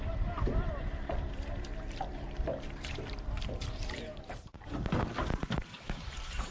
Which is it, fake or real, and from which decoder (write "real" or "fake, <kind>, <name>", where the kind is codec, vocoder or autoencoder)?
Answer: fake, vocoder, BigVGAN v2